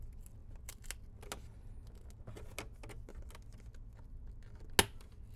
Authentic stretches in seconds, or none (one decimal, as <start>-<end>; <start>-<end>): 0.0-5.4